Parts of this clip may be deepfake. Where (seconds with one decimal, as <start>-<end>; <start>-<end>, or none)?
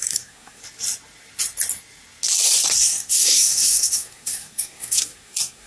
0.0-0.6; 2.8-5.7